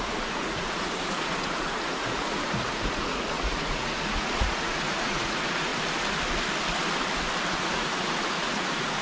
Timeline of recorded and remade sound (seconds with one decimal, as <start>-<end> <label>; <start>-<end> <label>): 0.0-5.7 remade; 5.7-7.5 recorded; 7.5-9.0 remade